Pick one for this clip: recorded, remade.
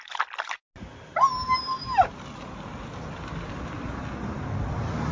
recorded